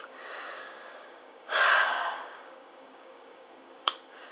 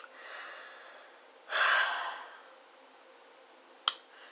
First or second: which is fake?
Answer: first